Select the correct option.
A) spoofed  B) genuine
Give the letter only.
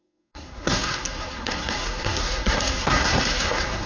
A